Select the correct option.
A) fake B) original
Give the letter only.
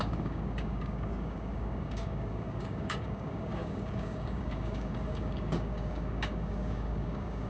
A